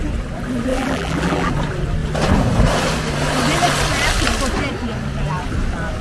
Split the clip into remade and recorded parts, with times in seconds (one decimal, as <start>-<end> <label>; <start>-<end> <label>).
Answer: 0.0-0.7 recorded; 0.7-1.5 remade; 1.5-6.0 recorded